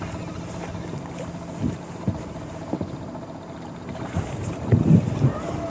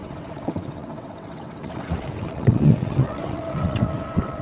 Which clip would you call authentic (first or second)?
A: first